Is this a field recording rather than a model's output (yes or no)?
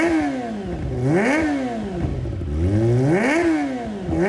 yes